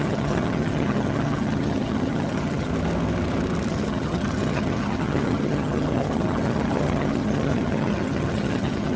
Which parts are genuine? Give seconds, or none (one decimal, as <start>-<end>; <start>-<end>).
2.7-3.7